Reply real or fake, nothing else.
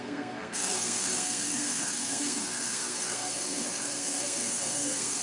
fake